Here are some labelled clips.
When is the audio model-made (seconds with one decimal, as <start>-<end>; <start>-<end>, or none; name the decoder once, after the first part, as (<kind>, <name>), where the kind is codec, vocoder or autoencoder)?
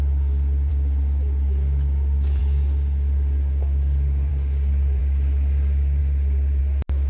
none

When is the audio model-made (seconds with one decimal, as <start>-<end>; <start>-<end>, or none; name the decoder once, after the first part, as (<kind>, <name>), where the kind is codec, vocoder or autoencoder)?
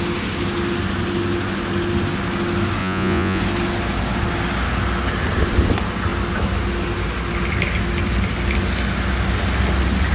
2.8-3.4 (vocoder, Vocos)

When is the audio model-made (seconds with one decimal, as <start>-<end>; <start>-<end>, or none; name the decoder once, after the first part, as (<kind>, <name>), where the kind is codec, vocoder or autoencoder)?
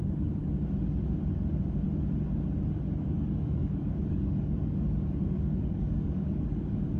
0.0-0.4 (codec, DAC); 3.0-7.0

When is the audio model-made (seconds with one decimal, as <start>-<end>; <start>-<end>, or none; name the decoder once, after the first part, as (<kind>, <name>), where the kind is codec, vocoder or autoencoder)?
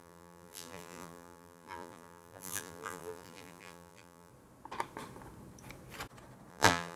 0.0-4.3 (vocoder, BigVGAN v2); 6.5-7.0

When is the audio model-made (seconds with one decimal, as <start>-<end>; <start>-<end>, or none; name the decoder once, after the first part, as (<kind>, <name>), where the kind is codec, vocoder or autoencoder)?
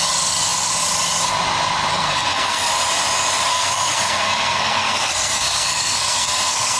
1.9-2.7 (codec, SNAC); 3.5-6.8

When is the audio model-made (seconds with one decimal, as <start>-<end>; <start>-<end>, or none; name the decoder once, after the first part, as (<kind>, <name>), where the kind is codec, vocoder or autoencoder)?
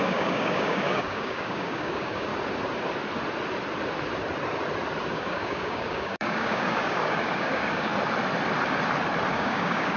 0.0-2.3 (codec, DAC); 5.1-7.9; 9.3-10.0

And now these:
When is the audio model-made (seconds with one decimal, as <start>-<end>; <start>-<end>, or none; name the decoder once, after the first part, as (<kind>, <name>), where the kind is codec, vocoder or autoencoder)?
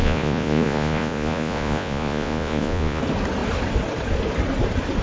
0.0-3.0 (vocoder, Vocos)